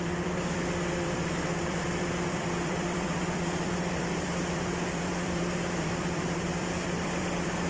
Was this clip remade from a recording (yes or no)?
yes